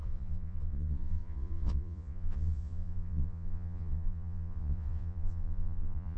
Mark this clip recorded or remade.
remade